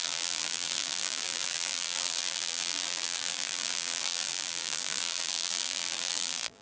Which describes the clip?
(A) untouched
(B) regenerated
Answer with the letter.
B